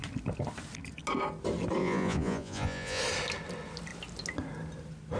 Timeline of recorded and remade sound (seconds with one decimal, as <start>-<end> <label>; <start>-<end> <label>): 0.0-1.8 recorded; 1.8-3.0 remade; 3.0-5.2 recorded